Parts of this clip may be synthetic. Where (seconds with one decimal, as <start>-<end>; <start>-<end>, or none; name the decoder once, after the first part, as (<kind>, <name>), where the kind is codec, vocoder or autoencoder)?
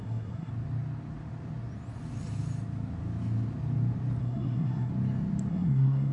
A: 0.0-0.5 (codec, SNAC); 4.2-4.9; 5.5-6.1